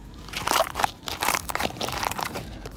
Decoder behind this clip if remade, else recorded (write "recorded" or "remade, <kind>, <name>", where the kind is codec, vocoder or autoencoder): remade, vocoder, BigVGAN v2